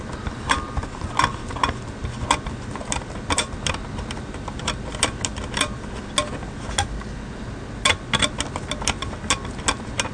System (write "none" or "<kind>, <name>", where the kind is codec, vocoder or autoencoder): none